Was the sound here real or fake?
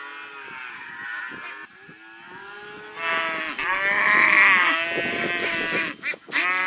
real